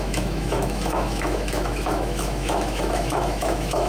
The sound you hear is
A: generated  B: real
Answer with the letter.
A